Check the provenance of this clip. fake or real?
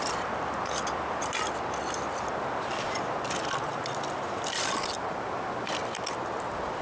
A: real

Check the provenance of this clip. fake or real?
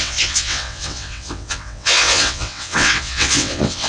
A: fake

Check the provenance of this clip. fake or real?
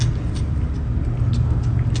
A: real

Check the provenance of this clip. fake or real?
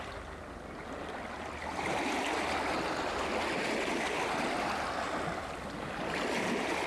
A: real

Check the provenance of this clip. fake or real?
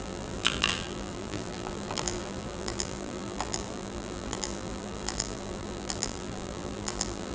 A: fake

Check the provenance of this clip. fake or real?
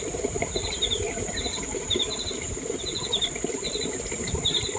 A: fake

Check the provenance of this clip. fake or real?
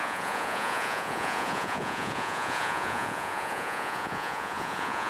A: fake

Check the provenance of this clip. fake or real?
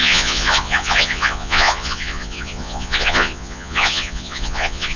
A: fake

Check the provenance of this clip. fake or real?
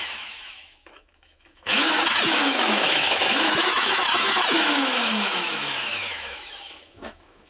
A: fake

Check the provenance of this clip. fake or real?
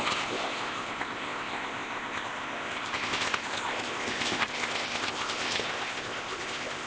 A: fake